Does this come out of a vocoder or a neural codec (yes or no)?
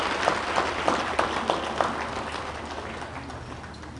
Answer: no